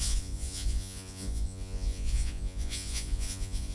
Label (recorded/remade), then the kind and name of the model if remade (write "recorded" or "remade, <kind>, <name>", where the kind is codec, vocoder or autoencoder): remade, vocoder, Vocos